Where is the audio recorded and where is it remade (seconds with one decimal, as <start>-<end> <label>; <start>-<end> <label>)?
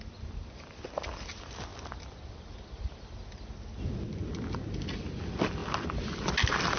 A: 0.0-6.8 recorded